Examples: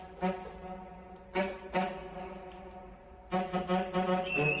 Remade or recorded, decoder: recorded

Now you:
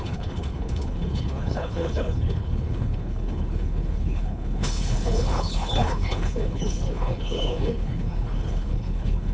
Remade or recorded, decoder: remade, codec, HILCodec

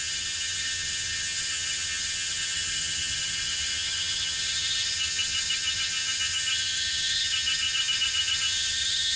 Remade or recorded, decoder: remade, vocoder, HiFi-GAN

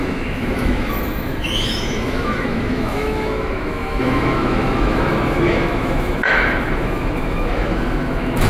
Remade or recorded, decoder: remade, autoencoder, DAC-VAE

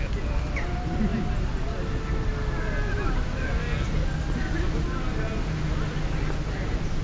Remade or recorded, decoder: recorded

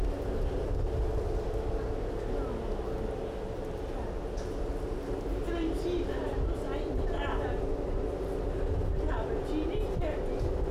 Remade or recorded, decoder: recorded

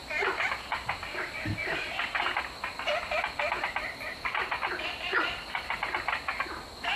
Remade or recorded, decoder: recorded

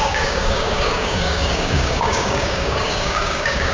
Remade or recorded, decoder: remade, codec, DAC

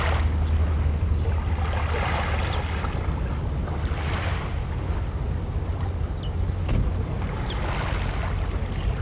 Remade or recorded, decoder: recorded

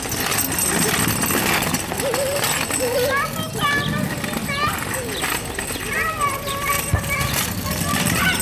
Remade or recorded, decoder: recorded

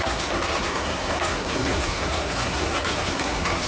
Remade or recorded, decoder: remade, codec, SNAC